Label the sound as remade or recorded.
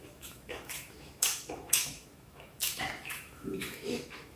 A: remade